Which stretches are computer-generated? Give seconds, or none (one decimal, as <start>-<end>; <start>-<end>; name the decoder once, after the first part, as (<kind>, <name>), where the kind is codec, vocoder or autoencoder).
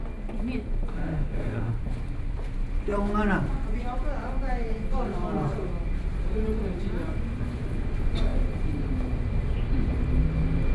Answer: 0.9-1.7 (autoencoder, DAC-VAE)